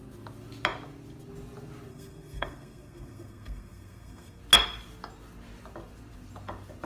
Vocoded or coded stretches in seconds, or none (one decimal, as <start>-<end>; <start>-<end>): 1.9-4.4